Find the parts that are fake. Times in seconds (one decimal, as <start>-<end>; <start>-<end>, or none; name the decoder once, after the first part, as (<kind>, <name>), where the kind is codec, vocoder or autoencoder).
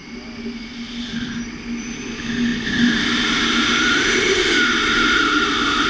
none